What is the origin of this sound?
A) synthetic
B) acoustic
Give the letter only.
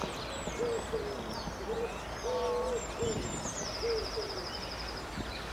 B